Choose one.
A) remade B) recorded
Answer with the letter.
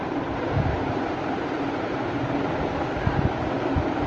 A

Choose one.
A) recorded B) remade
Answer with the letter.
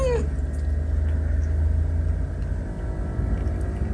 A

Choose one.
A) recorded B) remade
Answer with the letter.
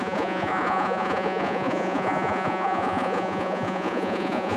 B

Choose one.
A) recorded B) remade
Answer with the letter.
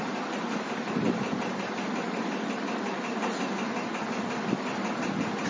A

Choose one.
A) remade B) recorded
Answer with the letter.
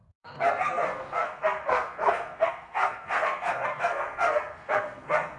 A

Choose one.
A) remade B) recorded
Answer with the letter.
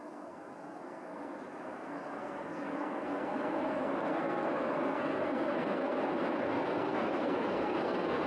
A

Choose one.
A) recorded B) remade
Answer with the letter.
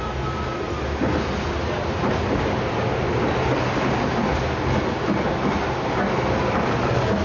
A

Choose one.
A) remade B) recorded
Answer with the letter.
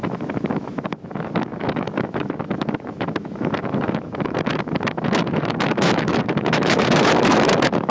A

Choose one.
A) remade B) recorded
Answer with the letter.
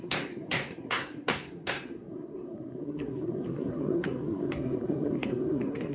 A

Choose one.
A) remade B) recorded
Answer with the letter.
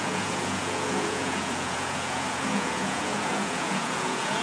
A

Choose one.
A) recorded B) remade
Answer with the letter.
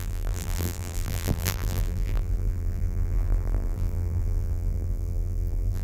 B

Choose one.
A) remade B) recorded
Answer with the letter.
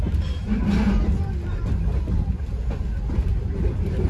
B